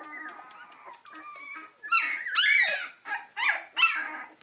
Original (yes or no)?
yes